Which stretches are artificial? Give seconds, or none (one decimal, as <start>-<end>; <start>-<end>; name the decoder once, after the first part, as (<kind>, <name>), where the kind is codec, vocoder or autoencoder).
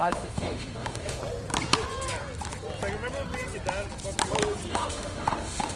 0.0-1.2 (autoencoder, DAC-VAE); 4.7-5.8